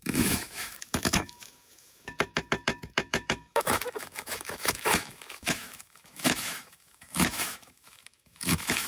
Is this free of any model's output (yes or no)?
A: no